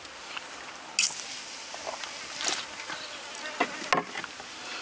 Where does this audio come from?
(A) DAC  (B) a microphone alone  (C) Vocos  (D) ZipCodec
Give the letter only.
B